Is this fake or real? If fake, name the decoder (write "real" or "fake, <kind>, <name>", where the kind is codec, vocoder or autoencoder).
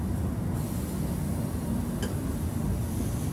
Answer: real